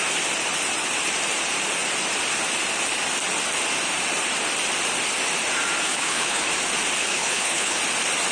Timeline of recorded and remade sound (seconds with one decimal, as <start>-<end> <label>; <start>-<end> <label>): 0.0-5.9 recorded; 5.9-6.4 remade; 6.4-7.0 recorded; 7.0-7.8 remade; 7.8-8.3 recorded